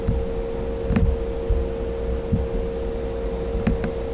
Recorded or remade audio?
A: recorded